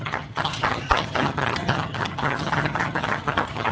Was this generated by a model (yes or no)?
yes